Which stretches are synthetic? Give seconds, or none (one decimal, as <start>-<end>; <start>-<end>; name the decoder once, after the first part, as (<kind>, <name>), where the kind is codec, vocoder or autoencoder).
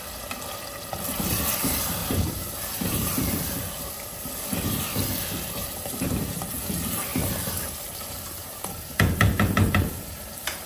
2.0-3.9 (vocoder, BigVGAN v2); 5.6-6.4; 7.1-10.7